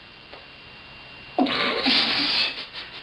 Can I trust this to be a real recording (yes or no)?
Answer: yes